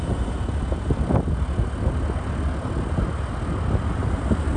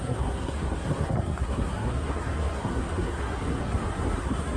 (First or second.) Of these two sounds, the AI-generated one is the second